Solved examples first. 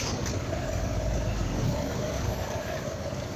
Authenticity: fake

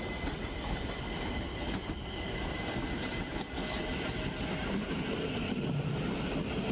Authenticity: real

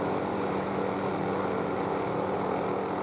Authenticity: real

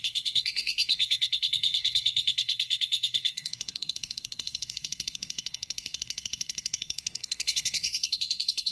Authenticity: fake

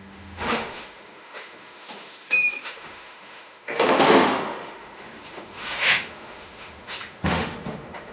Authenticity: fake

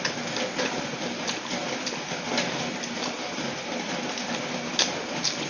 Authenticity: real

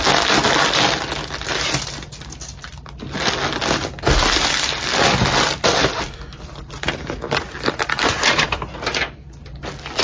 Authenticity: real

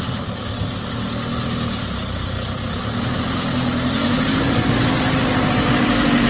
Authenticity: real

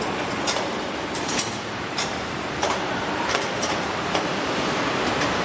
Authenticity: fake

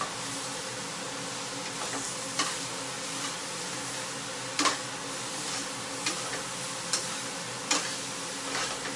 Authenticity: real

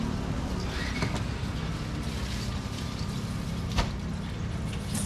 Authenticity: real